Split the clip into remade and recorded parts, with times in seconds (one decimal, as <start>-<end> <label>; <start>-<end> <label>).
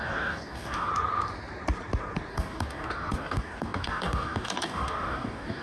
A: 0.0-0.9 remade; 0.9-2.3 recorded; 2.3-5.6 remade